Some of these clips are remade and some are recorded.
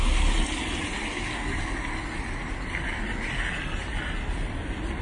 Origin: recorded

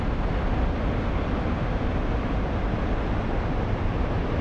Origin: recorded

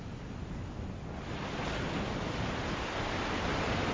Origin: recorded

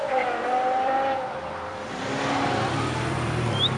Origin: remade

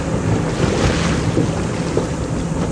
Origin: recorded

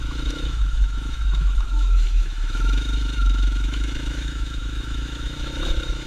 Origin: remade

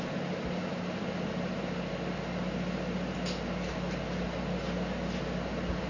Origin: recorded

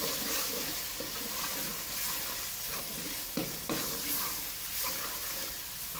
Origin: recorded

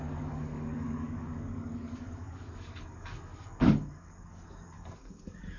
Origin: remade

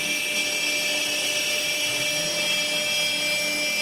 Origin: recorded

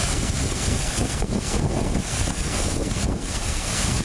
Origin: remade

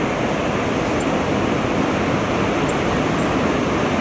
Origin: recorded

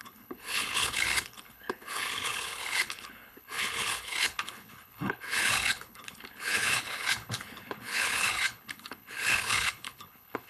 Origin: remade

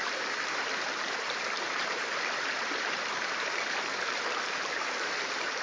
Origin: remade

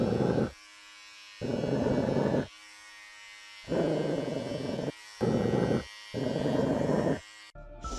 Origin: recorded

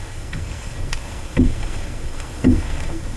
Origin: remade